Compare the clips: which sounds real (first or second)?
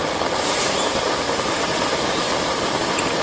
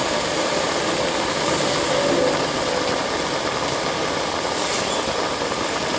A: second